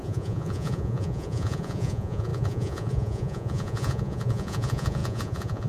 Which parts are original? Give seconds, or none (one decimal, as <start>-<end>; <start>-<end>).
none